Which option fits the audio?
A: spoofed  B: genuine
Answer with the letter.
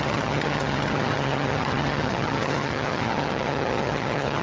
A